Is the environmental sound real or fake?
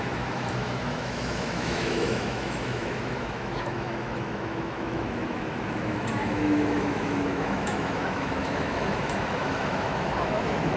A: fake